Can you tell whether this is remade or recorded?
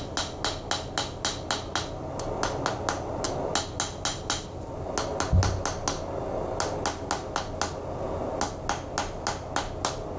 recorded